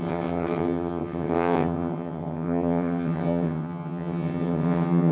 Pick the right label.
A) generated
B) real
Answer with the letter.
A